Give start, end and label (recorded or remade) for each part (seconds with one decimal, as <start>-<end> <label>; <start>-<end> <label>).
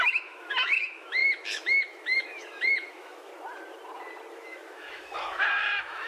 0.0-3.3 remade; 3.3-4.3 recorded; 4.3-6.1 remade